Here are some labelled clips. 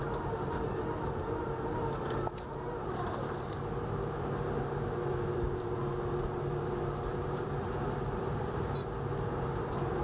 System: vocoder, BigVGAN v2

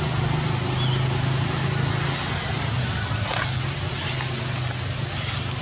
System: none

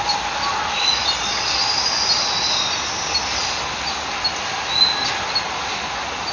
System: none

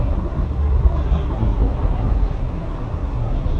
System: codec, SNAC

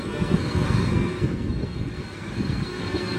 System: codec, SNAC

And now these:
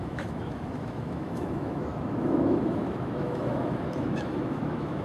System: autoencoder, DAC-VAE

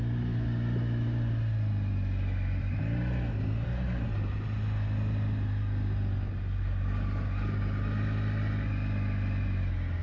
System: none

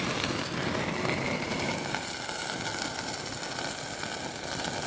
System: none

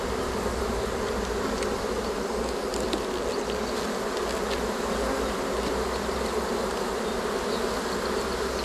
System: none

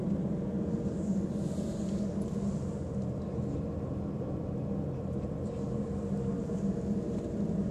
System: none